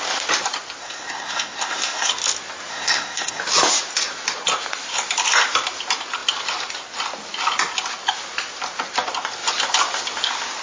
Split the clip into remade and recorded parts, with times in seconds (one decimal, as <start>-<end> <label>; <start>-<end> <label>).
0.0-0.8 recorded; 0.8-2.1 remade; 2.1-2.7 recorded; 2.7-3.4 remade; 3.4-10.6 recorded